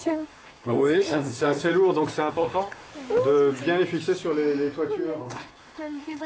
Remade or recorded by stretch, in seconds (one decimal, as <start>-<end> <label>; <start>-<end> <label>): 0.0-1.7 remade; 1.7-2.3 recorded; 2.3-2.9 remade; 2.9-5.2 recorded; 5.2-6.3 remade